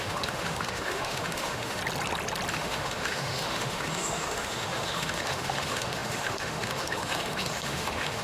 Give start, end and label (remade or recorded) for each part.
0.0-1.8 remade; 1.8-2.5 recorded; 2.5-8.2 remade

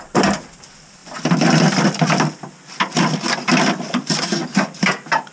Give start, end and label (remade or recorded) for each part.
0.0-5.3 recorded